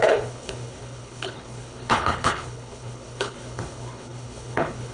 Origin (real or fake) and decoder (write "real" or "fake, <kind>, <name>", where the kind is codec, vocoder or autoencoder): fake, codec, HILCodec